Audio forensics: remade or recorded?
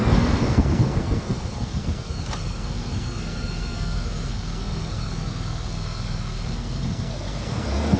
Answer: remade